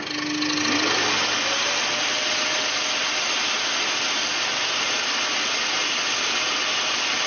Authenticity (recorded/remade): recorded